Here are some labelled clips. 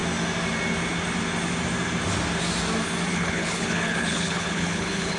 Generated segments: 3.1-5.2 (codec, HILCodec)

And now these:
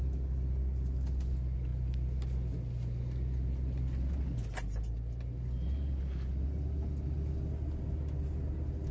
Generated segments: none

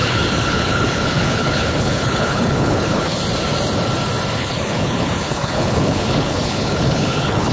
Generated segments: 0.0-3.2 (codec, HILCodec); 4.4-7.5

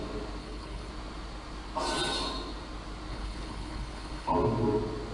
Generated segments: 0.4-0.9 (codec, HILCodec); 3.1-4.3

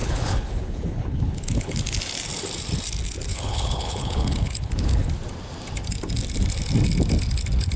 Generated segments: 0.0-1.8 (codec, HILCodec); 3.3-5.1

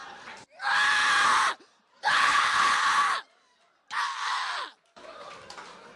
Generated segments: 2.0-2.8 (codec, HILCodec)

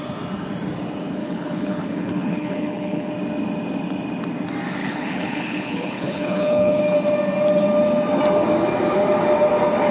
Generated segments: 1.2-3.1 (codec, HILCodec); 4.8-6.8

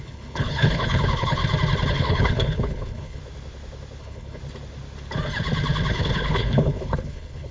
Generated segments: 0.0-1.4 (codec, HILCodec); 1.9-3.2; 4.0-4.4; 5.9-7.5